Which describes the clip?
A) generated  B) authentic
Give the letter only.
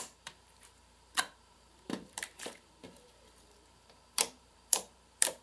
A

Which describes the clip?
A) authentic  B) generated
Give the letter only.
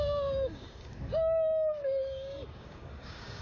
B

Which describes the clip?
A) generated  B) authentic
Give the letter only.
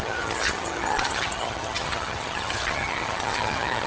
A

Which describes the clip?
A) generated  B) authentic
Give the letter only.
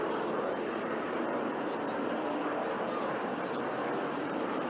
A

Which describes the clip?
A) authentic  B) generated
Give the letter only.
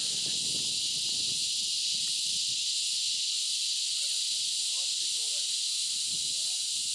A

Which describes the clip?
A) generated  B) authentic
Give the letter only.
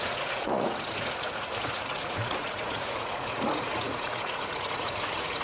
A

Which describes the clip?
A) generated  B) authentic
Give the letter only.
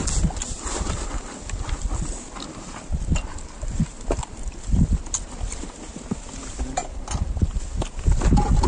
B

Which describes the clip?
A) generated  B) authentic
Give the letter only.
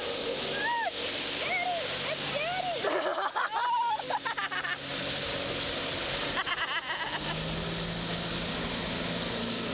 B